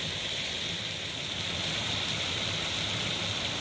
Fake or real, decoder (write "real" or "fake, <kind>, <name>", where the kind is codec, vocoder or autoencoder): real